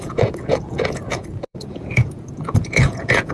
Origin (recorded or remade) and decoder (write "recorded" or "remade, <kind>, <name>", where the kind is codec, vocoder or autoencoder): remade, vocoder, Vocos